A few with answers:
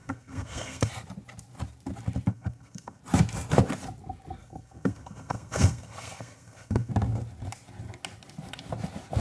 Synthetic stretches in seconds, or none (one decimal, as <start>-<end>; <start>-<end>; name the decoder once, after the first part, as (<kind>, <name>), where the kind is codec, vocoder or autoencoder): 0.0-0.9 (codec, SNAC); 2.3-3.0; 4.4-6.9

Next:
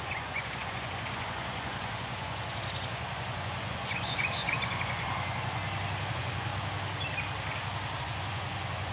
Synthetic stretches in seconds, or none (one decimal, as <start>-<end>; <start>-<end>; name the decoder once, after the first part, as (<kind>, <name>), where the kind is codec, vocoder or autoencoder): 0.0-5.6 (vocoder, Vocos); 6.1-6.5; 8.0-8.9

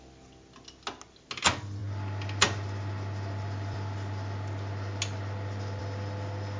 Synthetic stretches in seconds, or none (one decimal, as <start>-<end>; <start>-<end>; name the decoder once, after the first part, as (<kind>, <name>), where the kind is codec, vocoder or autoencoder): none

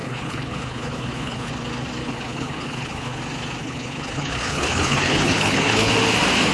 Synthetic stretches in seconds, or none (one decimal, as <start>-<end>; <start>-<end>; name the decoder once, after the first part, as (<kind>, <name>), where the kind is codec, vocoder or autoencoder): 0.0-1.5 (codec, HILCodec); 2.0-3.2; 3.6-5.9